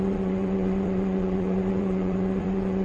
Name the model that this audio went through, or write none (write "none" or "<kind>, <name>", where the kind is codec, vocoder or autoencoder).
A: vocoder, WaveNeXt